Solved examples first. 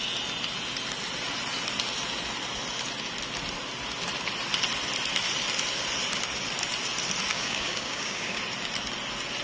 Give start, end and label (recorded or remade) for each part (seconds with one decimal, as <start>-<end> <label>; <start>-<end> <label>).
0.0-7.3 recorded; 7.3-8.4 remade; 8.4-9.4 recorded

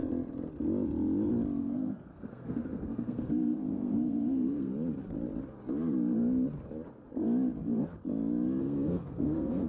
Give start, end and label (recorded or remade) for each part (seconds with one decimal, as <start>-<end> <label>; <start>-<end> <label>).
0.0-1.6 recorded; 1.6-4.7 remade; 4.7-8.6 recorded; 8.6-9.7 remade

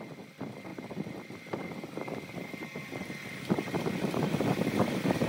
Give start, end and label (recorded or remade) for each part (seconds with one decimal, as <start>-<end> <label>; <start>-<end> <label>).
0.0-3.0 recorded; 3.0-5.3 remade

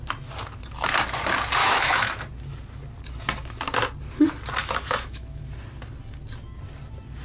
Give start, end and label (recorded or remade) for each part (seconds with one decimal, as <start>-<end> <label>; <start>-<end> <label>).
0.0-1.6 recorded; 1.6-2.2 remade; 2.2-4.6 recorded; 4.6-5.4 remade; 5.4-7.2 recorded

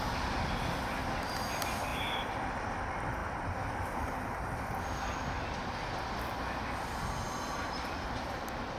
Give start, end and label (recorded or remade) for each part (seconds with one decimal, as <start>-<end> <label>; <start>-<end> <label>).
0.0-1.9 recorded; 1.9-2.8 remade; 2.8-3.2 recorded; 3.2-4.6 remade; 4.6-8.8 recorded